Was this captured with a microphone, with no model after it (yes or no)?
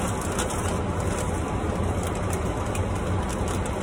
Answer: yes